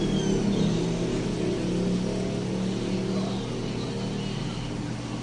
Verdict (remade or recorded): recorded